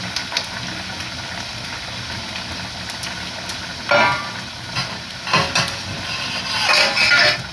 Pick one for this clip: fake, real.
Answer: real